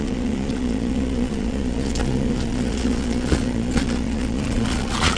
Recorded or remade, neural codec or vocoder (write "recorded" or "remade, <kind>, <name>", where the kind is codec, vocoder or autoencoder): remade, vocoder, Vocos